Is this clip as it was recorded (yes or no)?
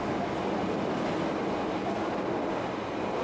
yes